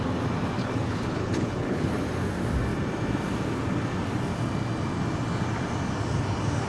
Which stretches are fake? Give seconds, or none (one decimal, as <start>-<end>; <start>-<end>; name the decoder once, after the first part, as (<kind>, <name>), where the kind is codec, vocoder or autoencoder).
0.6-2.0 (codec, HILCodec)

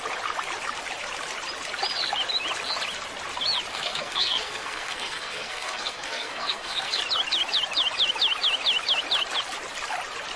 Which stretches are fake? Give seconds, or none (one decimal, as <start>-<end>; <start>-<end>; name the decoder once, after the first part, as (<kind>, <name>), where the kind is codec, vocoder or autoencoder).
3.7-7.0 (codec, SNAC)

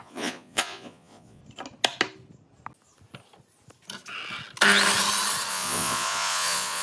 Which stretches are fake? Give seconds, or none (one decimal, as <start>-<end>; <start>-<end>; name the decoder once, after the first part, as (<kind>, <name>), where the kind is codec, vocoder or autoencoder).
0.0-1.4 (vocoder, Vocos); 5.5-6.8

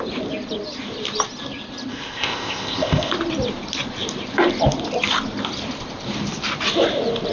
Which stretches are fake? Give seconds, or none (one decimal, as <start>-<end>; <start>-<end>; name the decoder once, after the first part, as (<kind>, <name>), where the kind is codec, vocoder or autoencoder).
1.9-3.1 (codec, ZipCodec)